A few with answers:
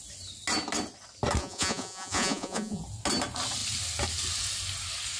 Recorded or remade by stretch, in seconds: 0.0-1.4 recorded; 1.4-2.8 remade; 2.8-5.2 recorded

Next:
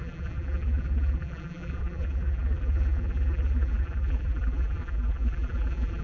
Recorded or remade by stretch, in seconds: 0.0-6.0 remade